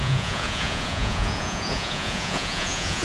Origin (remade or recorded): remade